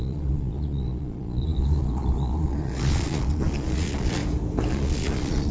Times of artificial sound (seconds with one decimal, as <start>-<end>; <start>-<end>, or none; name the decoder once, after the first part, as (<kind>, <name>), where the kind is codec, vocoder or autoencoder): 0.0-4.2 (vocoder, Vocos); 4.7-5.5